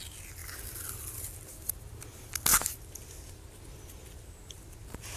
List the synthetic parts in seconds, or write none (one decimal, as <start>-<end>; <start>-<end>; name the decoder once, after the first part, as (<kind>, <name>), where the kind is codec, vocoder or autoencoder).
none